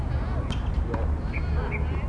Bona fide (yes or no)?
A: yes